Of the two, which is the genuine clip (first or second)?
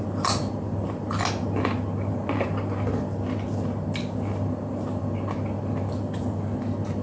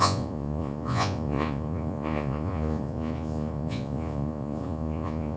first